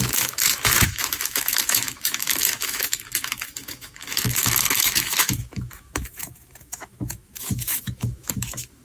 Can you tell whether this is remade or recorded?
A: remade